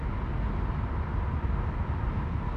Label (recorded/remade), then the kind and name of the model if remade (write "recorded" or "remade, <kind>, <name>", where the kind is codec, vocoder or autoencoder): recorded